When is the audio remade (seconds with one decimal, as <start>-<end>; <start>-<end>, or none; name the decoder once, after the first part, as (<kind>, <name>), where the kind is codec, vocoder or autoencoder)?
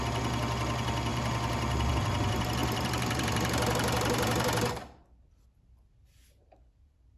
1.1-1.9 (vocoder, BigVGAN v2); 2.6-4.7